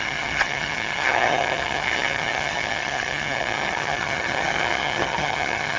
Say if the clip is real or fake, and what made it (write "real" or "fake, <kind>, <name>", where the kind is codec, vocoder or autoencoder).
fake, vocoder, HiFi-GAN